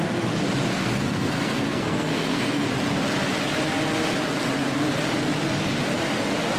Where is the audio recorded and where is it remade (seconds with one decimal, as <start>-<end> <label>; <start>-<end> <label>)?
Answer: 0.0-0.7 recorded; 0.7-2.7 remade; 2.7-6.6 recorded

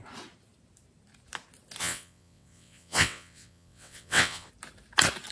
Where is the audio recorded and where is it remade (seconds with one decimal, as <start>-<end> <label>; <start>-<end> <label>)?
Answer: 0.0-1.8 recorded; 1.8-4.5 remade; 4.5-5.3 recorded

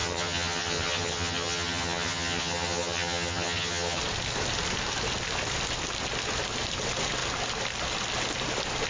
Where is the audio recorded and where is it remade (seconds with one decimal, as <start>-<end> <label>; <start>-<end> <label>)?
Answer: 0.0-4.0 remade; 4.0-8.9 recorded